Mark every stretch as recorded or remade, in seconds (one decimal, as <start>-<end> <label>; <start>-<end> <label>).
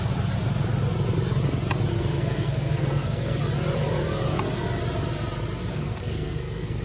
0.0-1.9 recorded; 1.9-3.4 remade; 3.4-5.7 recorded; 5.7-6.8 remade